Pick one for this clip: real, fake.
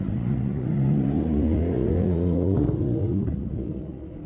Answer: fake